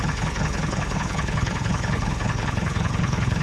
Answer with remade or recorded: remade